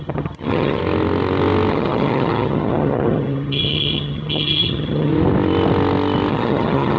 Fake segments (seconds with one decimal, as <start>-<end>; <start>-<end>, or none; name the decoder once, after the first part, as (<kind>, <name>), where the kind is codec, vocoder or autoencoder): 0.0-0.8 (vocoder, HiFi-GAN); 1.7-5.1; 6.3-7.0